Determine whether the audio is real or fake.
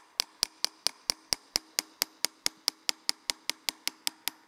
real